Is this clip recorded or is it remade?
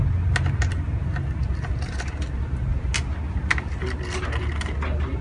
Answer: recorded